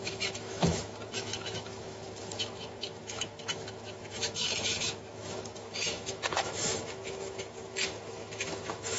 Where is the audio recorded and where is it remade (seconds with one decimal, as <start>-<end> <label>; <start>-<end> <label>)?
0.0-9.0 remade